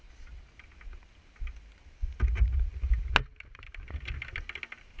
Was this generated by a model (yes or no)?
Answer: no